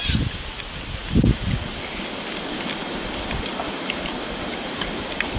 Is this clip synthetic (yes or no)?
no